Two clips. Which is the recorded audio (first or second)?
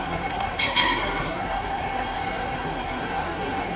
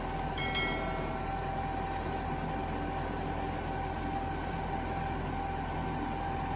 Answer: second